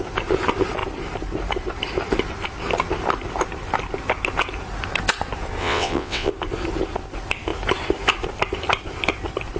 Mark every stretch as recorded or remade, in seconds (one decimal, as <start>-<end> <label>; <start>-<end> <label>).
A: 0.0-5.6 recorded; 5.6-6.3 remade; 6.3-9.6 recorded

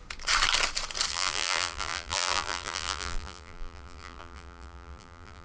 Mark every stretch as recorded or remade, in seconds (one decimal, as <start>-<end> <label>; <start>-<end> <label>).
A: 0.0-1.1 recorded; 1.1-5.4 remade

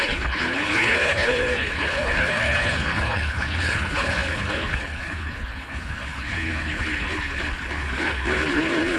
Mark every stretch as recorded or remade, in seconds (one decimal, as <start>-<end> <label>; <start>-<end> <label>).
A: 0.0-9.0 remade

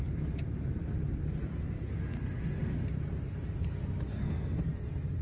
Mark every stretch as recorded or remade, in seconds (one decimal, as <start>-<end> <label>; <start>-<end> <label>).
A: 0.0-4.1 recorded; 4.1-4.6 remade; 4.6-5.2 recorded

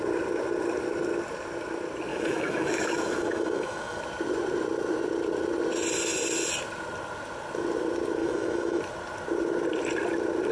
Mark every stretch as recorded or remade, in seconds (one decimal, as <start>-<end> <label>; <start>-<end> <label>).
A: 0.0-2.1 recorded; 2.1-4.0 remade; 4.0-8.2 recorded; 8.2-8.8 remade; 8.8-10.5 recorded

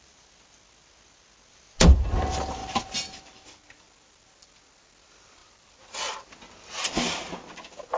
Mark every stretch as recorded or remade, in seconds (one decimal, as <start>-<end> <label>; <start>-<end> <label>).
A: 0.0-8.0 recorded

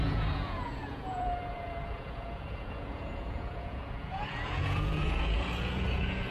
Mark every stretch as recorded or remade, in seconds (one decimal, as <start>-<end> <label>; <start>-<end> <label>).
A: 0.0-6.3 remade